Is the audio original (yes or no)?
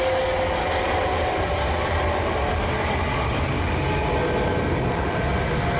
yes